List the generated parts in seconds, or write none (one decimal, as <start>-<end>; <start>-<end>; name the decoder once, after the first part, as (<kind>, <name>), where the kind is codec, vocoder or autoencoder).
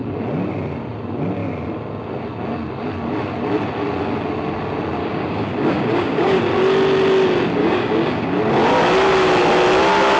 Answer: 5.0-6.4 (codec, DAC); 7.6-8.3